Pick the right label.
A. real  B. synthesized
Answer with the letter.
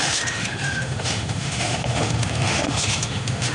B